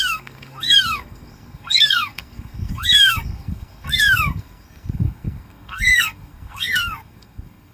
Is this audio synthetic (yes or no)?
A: yes